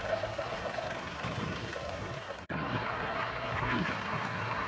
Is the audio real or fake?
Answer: fake